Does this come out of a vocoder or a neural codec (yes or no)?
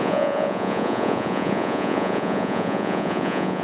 yes